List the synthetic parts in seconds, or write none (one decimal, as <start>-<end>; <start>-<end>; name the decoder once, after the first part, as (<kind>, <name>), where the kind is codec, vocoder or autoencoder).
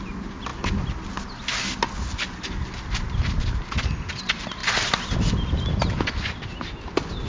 none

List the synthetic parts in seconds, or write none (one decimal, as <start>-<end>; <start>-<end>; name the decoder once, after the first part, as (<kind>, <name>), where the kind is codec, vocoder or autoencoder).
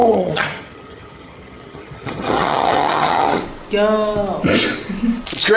0.0-3.4 (vocoder, HiFi-GAN)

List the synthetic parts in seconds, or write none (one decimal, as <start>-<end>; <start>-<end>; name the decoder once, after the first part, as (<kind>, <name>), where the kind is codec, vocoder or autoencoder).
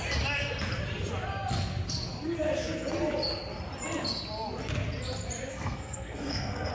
5.5-6.7 (codec, SNAC)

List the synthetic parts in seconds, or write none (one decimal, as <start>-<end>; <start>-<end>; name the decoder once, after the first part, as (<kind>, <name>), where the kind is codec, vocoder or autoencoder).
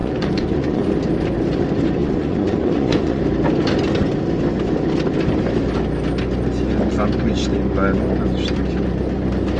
0.0-0.8 (vocoder, Vocos); 2.0-3.2